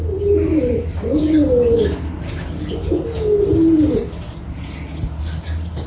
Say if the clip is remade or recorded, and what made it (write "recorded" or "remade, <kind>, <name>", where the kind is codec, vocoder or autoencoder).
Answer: recorded